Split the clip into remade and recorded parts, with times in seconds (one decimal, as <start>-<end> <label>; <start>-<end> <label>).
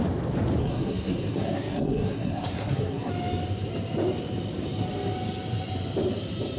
0.0-0.6 recorded; 0.6-3.1 remade; 3.1-6.6 recorded